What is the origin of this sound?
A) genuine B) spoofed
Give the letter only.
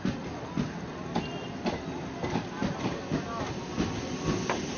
A